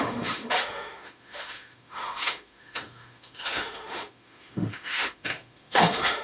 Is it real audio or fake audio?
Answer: fake